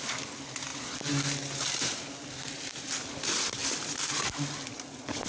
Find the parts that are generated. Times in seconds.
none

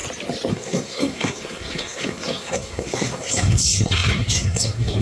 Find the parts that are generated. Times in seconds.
0.5-5.0

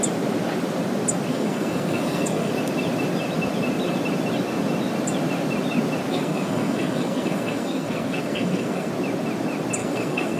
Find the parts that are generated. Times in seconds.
1.3-2.5; 6.1-8.9; 9.8-10.4

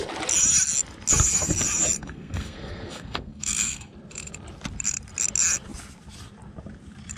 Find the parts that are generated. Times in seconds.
2.0-3.9

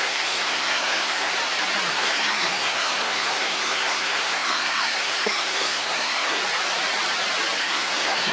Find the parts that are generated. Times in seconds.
0.0-1.3; 1.9-6.4; 7.6-8.3